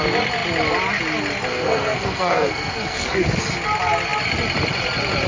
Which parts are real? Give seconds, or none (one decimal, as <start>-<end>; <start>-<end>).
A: 0.0-1.5; 3.4-5.3